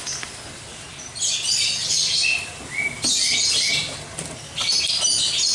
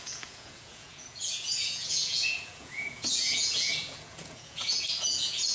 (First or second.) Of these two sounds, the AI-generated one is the second